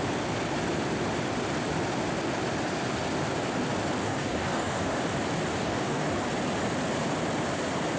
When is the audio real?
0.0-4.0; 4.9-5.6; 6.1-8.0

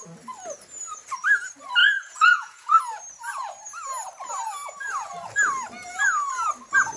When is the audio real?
0.0-1.8; 2.8-7.0

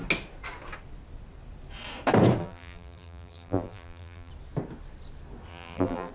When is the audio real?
0.0-2.4; 4.3-5.5

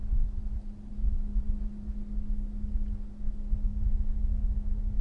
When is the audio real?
0.0-5.0

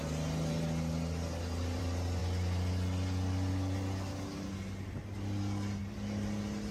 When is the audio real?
0.0-6.7

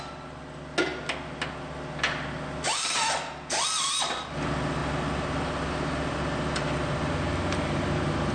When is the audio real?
0.0-8.3

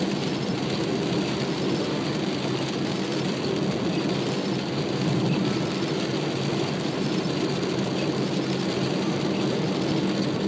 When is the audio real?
0.0-10.5